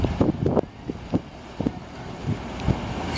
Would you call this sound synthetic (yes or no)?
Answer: no